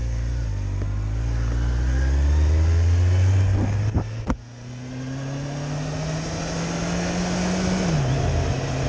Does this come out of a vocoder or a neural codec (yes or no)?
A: no